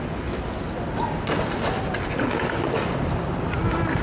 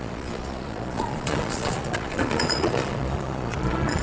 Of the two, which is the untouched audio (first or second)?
first